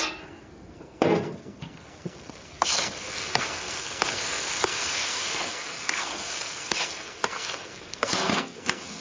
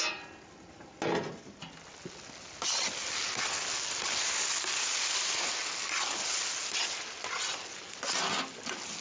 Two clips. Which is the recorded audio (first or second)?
second